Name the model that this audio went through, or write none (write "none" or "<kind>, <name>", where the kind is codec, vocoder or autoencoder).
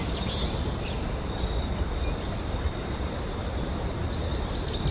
none